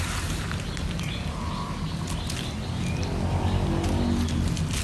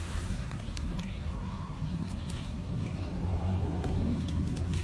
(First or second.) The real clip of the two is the first